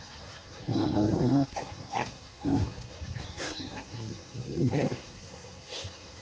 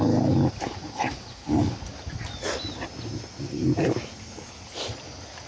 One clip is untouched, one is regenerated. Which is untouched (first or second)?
second